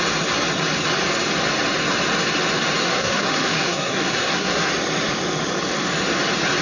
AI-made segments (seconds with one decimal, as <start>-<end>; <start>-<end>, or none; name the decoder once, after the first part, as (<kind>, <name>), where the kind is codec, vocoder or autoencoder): 2.8-4.7 (codec, SNAC)